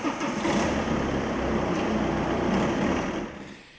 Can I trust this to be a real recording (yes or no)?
no